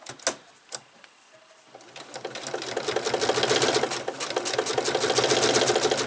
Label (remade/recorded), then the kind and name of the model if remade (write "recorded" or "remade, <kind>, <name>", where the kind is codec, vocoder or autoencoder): recorded